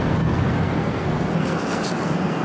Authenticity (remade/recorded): remade